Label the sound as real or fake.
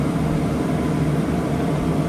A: real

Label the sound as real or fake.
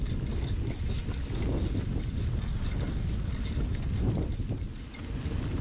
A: real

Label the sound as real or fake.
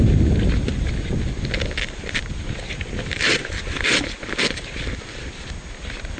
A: real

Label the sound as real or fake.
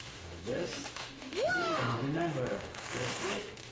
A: fake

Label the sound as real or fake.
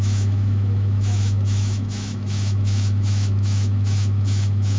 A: fake